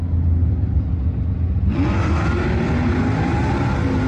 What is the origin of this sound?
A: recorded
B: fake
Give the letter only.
A